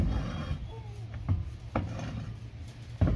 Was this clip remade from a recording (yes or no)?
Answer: no